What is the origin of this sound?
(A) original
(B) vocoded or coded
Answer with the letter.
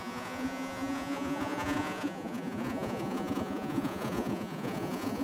B